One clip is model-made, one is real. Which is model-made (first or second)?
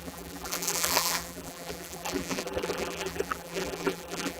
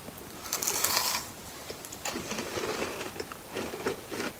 first